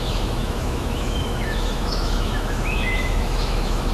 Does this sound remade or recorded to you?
remade